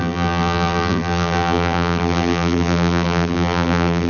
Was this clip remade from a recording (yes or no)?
yes